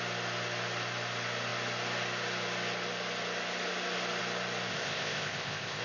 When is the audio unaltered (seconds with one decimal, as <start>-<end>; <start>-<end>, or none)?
0.0-4.7